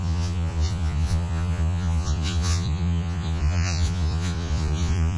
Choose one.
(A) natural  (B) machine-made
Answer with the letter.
B